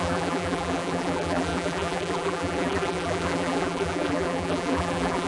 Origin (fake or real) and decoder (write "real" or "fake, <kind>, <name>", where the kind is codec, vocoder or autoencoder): fake, vocoder, BigVGAN v2